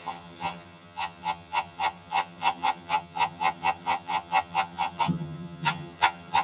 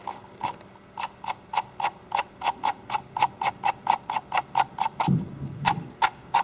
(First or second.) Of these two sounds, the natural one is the second